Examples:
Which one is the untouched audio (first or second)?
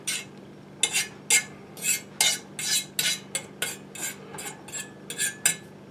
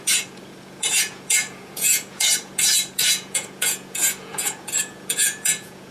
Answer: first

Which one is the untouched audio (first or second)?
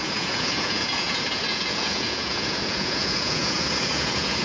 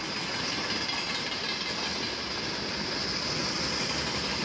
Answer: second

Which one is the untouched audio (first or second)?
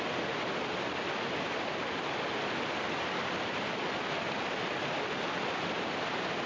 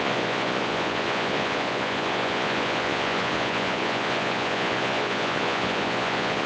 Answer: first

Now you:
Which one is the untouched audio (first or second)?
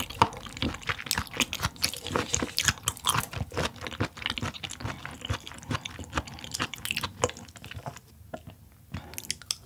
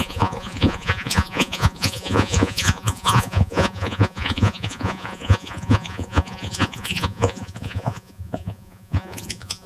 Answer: first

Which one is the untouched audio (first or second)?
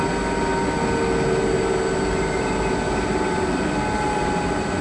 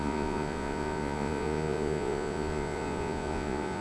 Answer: first